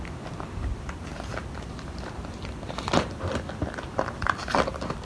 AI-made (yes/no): yes